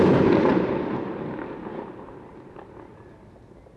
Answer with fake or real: real